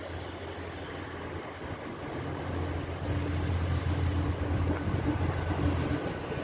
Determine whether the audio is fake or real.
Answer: real